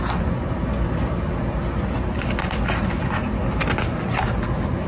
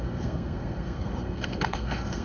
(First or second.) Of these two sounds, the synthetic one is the second